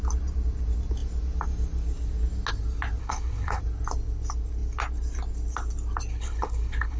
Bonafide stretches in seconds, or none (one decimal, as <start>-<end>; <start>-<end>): 0.0-3.0; 3.6-6.1